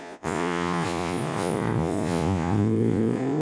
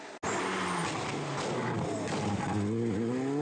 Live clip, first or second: second